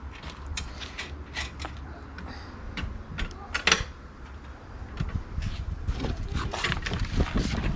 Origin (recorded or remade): recorded